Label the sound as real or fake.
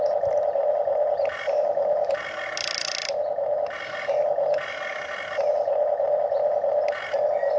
real